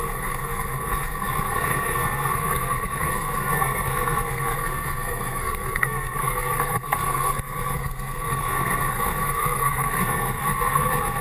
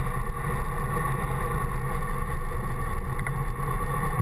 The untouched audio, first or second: second